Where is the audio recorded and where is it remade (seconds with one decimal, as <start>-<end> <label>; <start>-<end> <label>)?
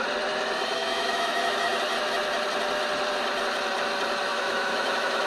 0.0-0.8 recorded; 0.8-1.9 remade; 1.9-4.3 recorded; 4.3-5.3 remade